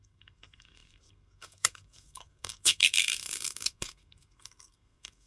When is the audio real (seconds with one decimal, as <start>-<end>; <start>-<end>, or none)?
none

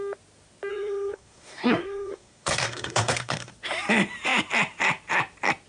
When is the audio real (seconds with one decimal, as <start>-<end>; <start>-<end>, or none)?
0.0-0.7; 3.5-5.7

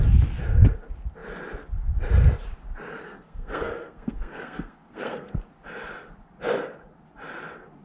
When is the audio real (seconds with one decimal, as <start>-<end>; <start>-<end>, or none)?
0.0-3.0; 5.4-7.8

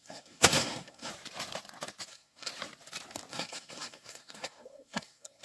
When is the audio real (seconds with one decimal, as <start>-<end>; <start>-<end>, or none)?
1.1-2.1; 2.5-3.3

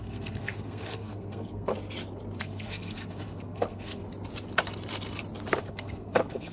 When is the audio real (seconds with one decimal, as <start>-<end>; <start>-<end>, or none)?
1.7-2.4; 4.0-5.6

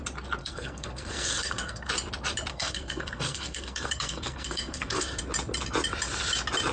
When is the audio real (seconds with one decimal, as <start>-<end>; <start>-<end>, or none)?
0.0-0.4; 1.9-2.5; 5.2-6.7

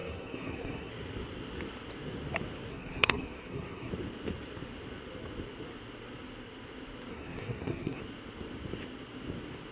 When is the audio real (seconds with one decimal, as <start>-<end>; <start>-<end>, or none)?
0.9-2.7; 3.9-7.1; 8.0-9.7

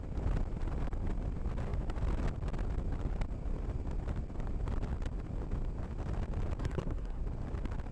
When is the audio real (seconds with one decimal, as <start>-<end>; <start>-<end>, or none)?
0.0-6.6; 7.2-7.9